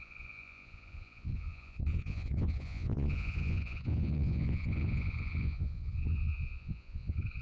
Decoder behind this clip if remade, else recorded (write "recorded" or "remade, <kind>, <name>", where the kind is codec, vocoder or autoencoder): remade, vocoder, Vocos